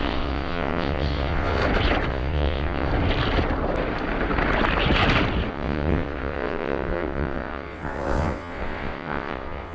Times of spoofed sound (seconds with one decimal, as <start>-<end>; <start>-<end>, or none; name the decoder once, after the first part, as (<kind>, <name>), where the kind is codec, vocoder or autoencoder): 0.0-1.6 (vocoder, WaveNeXt); 2.1-2.9; 5.5-9.7

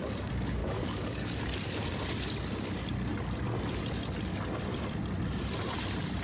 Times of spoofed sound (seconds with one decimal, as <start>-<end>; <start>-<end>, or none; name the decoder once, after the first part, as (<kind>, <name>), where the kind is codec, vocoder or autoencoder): 0.6-1.4 (codec, DAC)